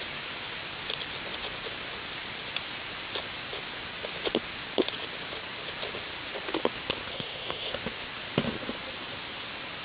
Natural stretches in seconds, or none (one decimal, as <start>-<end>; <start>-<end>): 0.0-7.1; 7.7-9.8